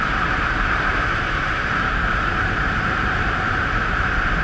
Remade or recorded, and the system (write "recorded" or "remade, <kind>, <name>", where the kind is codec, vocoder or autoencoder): remade, vocoder, BigVGAN v2